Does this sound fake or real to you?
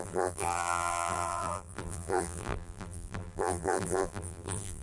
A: fake